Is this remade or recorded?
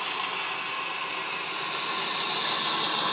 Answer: recorded